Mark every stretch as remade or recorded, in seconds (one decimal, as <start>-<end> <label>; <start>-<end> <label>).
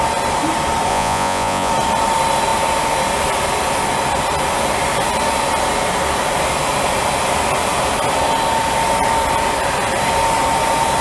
0.0-0.9 recorded; 0.9-1.7 remade; 1.7-11.0 recorded